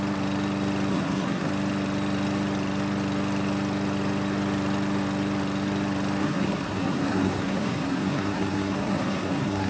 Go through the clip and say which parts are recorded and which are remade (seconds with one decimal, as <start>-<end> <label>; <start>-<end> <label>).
0.0-0.9 recorded; 0.9-1.5 remade; 1.5-6.2 recorded; 6.2-9.7 remade